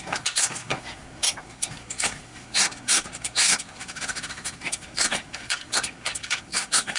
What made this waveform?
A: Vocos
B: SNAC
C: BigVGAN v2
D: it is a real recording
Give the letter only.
B